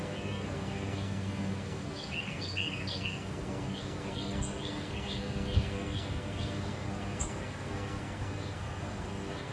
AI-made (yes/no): yes